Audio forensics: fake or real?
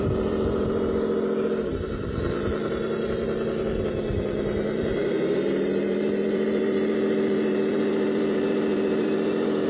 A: fake